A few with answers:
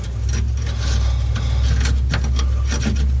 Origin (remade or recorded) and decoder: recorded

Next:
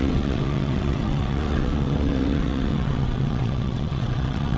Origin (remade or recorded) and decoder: remade, vocoder, WaveNeXt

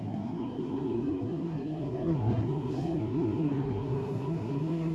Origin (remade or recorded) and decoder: remade, codec, SNAC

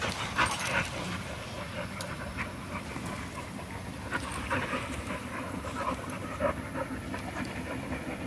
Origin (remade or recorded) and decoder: recorded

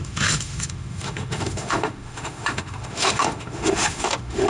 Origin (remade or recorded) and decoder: remade, autoencoder, DAC-VAE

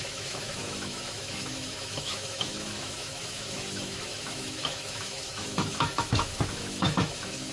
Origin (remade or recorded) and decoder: remade, autoencoder, DAC-VAE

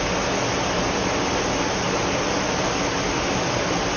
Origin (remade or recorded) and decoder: recorded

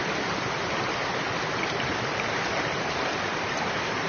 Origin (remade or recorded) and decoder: recorded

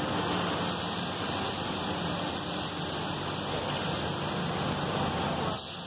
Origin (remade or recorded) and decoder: recorded